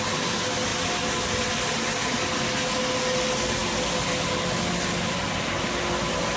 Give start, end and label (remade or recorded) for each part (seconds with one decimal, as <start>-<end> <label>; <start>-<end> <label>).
0.0-6.4 recorded